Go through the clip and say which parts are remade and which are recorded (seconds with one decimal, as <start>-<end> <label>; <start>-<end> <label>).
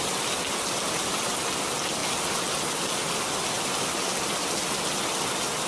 0.0-5.7 recorded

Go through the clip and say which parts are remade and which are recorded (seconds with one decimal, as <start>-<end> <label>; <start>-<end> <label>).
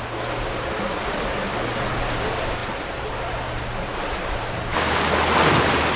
0.0-6.0 recorded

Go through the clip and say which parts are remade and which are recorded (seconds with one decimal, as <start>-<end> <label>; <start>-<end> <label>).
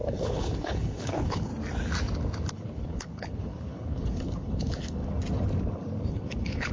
0.0-1.5 remade; 1.5-2.5 recorded; 2.5-5.0 remade; 5.0-6.1 recorded; 6.1-6.7 remade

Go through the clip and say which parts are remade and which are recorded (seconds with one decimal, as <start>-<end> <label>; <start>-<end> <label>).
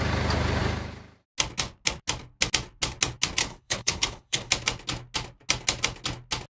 0.0-3.4 recorded; 3.4-4.5 remade; 4.5-6.5 recorded